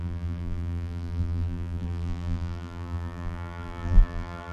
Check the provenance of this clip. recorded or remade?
remade